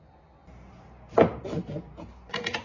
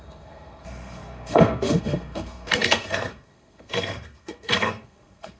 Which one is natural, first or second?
first